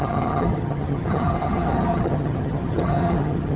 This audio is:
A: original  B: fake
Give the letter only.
B